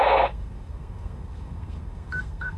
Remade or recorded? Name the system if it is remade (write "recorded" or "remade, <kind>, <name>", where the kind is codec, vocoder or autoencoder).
remade, codec, SNAC